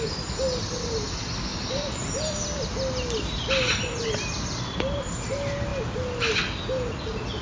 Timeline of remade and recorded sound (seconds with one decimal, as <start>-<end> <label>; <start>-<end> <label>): 0.0-7.4 recorded

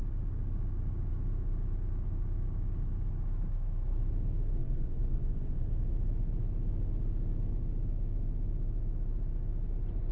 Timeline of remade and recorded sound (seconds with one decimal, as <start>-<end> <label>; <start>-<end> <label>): 0.0-4.6 recorded; 4.6-5.7 remade; 5.7-10.1 recorded

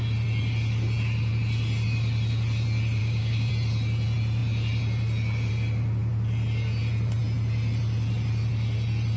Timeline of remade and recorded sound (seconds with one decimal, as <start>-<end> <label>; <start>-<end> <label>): 0.0-3.0 recorded; 3.0-3.5 remade; 3.5-9.2 recorded